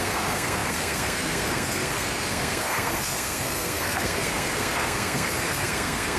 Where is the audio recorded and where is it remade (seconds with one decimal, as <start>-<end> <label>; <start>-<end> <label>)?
0.0-6.2 remade